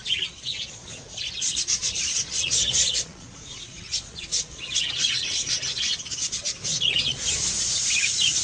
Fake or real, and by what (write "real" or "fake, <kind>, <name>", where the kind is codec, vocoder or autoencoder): fake, vocoder, Vocos